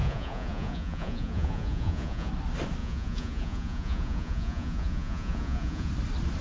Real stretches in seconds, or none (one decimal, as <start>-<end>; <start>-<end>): 2.3-2.8; 5.9-6.4